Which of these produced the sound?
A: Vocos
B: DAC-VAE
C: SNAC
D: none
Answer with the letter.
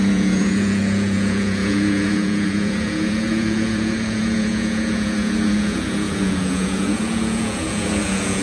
A